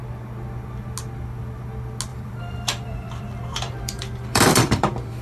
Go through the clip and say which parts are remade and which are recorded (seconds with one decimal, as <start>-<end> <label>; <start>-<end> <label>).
0.0-2.1 recorded; 2.1-5.2 remade